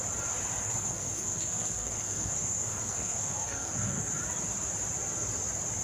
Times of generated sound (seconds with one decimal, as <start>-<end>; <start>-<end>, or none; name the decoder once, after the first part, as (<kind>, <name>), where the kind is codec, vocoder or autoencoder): 0.6-4.1 (codec, SNAC)